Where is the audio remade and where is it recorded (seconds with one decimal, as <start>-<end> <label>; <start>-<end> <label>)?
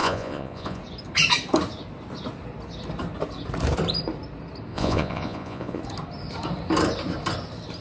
0.0-0.8 remade; 0.8-4.7 recorded; 4.7-5.8 remade; 5.8-7.8 recorded